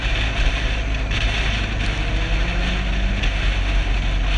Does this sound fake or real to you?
real